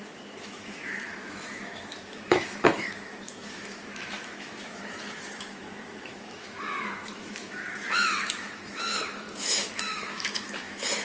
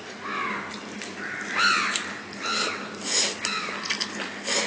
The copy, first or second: first